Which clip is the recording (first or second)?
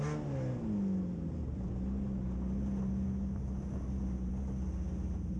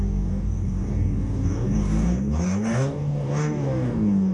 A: first